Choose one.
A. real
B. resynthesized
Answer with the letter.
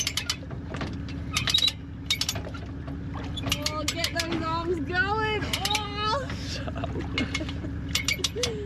A